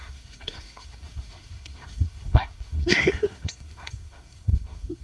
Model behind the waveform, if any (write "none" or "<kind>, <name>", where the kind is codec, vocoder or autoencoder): codec, SNAC